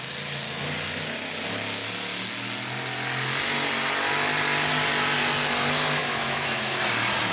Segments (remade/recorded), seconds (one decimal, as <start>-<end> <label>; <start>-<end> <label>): 0.0-6.0 recorded; 6.0-6.8 remade; 6.8-7.3 recorded